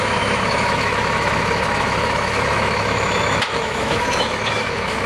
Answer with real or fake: fake